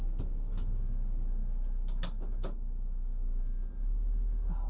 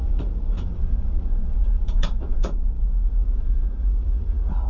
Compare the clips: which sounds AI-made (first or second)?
second